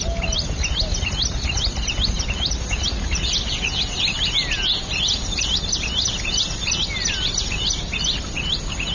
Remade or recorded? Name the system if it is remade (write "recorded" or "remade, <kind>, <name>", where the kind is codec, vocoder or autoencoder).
recorded